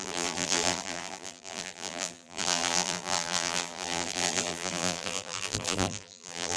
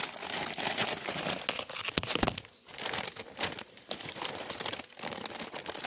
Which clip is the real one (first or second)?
second